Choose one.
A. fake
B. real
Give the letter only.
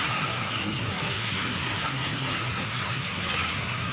A